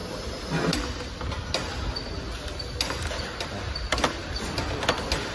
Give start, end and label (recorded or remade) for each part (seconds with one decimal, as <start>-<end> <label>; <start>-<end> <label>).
0.0-5.3 recorded